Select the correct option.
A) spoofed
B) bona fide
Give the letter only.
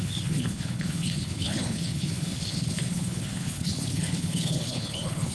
A